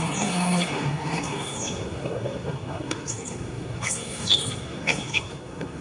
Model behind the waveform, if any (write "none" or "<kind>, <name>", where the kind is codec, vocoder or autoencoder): codec, SNAC